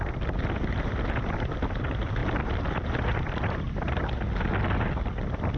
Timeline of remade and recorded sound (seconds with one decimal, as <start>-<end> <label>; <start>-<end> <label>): 0.0-2.2 recorded; 2.2-3.6 remade; 3.6-5.6 recorded